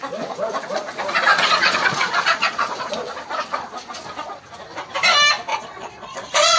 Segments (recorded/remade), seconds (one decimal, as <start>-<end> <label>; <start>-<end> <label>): 0.0-1.3 recorded; 1.3-2.9 remade; 2.9-5.5 recorded; 5.5-6.6 remade